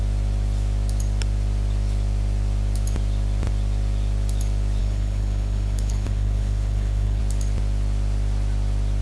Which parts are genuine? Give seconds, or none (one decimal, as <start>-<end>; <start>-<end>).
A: 0.0-4.8; 7.2-9.0